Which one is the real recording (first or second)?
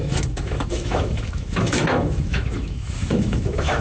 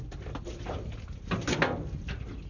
second